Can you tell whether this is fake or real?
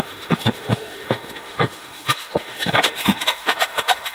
fake